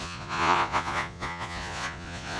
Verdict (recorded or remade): remade